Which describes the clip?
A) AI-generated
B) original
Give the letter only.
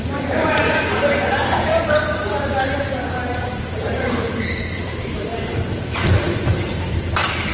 A